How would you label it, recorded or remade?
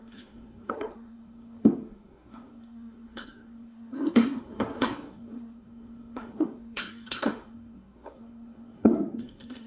remade